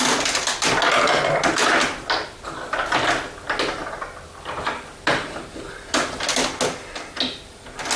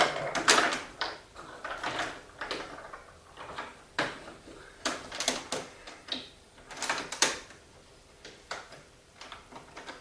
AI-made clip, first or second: second